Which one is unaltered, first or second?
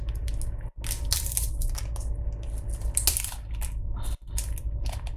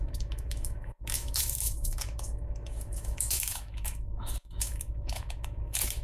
first